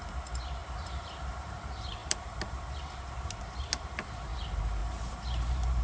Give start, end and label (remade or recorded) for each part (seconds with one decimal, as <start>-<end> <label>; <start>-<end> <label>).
0.0-0.6 recorded; 0.6-1.6 remade; 1.6-2.0 recorded; 2.0-2.8 remade; 2.8-4.8 recorded; 4.8-5.8 remade